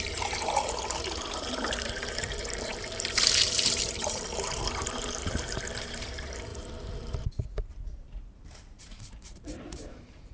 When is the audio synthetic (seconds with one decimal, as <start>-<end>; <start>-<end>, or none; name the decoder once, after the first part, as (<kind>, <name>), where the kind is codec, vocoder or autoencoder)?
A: 0.0-10.3 (vocoder, BigVGAN v2)